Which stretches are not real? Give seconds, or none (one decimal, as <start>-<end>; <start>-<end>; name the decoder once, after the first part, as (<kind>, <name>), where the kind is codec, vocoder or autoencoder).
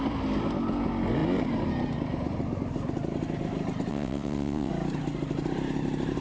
3.9-4.7 (vocoder, WaveNeXt)